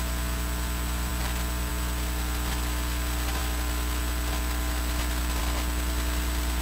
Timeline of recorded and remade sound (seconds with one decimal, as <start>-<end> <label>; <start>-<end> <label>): 0.0-6.6 recorded